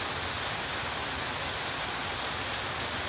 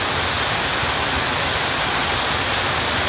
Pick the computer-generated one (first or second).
second